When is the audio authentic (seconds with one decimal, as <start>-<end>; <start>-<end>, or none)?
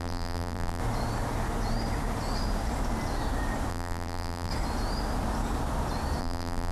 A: 0.8-3.7; 4.5-6.2